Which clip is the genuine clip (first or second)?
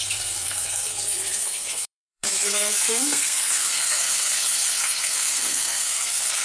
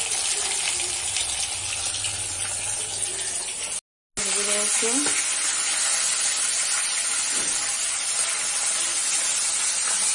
second